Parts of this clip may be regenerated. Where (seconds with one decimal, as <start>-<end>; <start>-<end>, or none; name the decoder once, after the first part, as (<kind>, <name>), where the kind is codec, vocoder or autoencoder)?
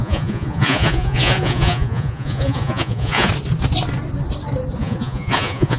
0.0-3.3 (vocoder, Vocos); 4.8-5.8